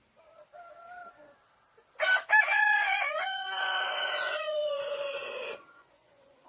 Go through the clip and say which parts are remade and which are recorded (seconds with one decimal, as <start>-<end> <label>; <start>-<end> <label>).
0.0-2.5 recorded; 2.5-6.5 remade